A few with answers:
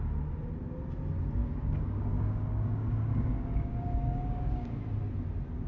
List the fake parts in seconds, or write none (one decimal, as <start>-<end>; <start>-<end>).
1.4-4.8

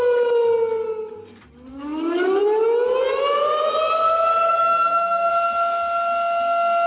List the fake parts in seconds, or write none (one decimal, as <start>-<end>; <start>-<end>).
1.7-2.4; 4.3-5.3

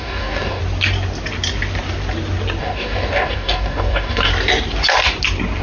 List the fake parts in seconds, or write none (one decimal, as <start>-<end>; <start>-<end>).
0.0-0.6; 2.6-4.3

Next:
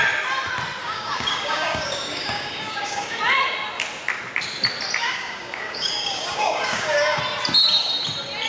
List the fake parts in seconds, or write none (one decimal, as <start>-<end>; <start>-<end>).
0.8-3.2; 5.0-7.2